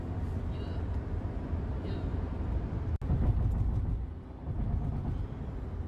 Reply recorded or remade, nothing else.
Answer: recorded